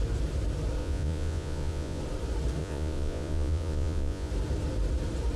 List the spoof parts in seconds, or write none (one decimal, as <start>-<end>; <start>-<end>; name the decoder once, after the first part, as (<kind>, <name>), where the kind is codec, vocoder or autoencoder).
0.8-2.0 (vocoder, Vocos); 2.6-4.3